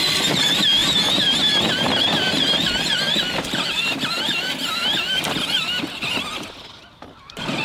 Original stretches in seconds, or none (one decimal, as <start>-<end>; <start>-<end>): 0.0-7.6